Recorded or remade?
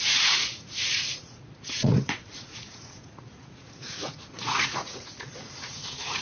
remade